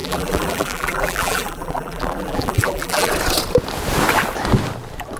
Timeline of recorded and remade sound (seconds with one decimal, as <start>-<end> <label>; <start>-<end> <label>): 0.0-3.1 remade; 3.1-5.2 recorded